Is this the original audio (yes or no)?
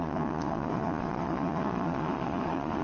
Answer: no